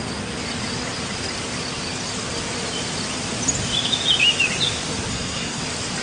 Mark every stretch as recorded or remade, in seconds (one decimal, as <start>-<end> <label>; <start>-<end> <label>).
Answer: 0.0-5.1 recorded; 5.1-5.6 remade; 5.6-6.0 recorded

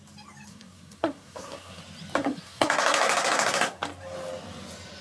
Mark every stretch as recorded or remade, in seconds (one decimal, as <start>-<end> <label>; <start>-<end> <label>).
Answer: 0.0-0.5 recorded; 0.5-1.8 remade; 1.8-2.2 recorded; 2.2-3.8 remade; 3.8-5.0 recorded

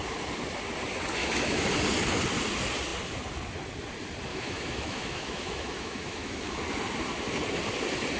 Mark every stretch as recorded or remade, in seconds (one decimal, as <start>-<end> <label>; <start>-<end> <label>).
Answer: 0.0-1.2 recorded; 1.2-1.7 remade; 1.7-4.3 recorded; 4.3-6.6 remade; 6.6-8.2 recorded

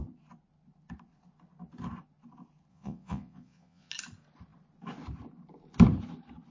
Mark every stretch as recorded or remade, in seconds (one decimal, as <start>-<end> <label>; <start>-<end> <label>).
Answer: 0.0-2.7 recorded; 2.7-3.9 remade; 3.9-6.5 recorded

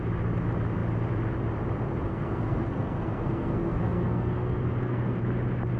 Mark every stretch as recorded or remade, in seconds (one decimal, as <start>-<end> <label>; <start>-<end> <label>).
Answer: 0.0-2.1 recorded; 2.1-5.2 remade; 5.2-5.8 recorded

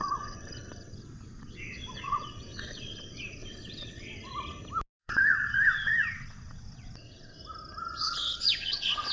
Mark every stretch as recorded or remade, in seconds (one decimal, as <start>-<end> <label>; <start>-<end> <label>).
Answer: 0.0-4.3 remade; 4.3-5.0 recorded; 5.0-7.4 remade; 7.4-8.0 recorded; 8.0-9.1 remade

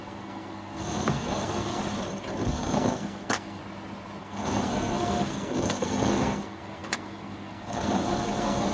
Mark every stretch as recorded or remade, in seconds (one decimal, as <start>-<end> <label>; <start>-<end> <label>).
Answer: 0.0-1.8 remade; 1.8-2.5 recorded; 2.5-3.6 remade; 3.6-4.2 recorded; 4.2-8.7 remade

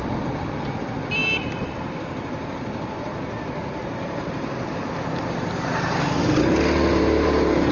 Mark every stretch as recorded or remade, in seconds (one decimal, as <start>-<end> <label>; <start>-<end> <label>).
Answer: 0.0-6.9 recorded; 6.9-7.7 remade